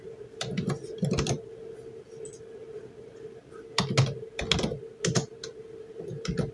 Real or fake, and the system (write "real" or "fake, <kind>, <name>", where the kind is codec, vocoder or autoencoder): real